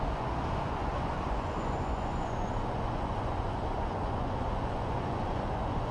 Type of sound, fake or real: fake